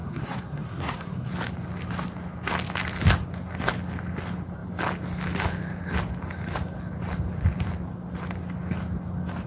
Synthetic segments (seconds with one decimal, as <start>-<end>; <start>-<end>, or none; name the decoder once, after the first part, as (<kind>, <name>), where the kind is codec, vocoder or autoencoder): 0.0-1.3 (codec, SNAC)